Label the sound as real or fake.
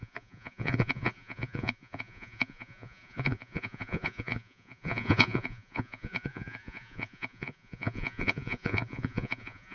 fake